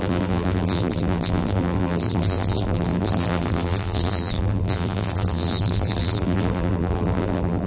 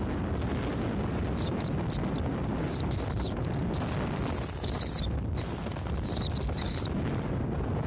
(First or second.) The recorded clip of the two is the second